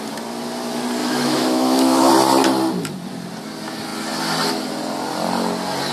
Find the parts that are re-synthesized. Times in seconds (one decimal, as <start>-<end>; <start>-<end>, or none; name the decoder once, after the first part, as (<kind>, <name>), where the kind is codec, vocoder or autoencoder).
1.0-2.1 (autoencoder, DAC-VAE)